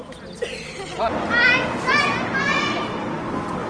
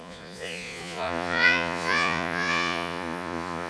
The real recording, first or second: first